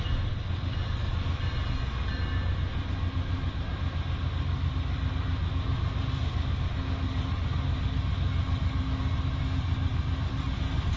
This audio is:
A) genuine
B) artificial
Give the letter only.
A